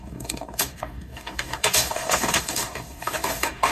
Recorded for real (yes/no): no